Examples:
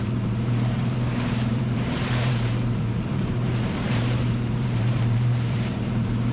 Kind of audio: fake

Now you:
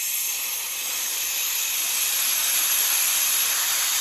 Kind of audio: fake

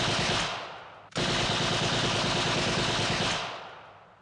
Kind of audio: real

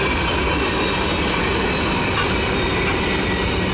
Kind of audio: real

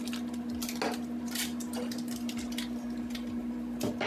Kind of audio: real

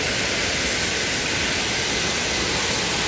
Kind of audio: real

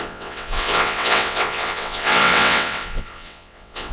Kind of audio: fake